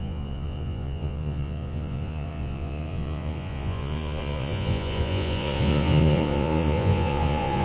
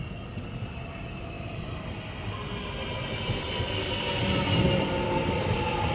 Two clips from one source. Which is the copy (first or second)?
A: first